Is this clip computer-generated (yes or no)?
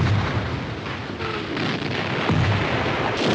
no